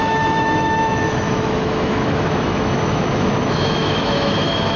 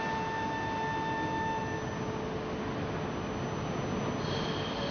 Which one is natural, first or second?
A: second